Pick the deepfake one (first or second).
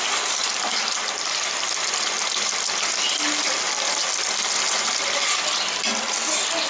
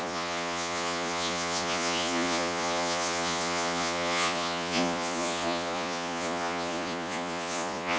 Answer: second